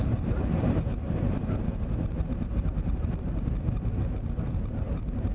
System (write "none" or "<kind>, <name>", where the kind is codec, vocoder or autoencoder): vocoder, BigVGAN v2